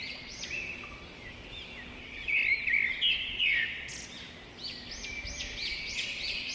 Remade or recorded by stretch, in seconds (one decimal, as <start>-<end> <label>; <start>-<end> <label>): 0.0-0.4 remade; 0.4-2.0 recorded; 2.0-2.4 remade; 2.4-3.1 recorded; 3.1-3.9 remade; 3.9-5.6 recorded; 5.6-6.5 remade